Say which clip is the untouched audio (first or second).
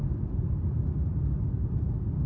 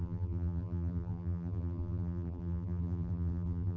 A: first